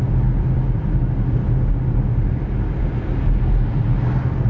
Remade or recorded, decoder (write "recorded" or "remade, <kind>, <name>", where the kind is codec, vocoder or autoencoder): recorded